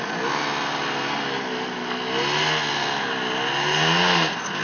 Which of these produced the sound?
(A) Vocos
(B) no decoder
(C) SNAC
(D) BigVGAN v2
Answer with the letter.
B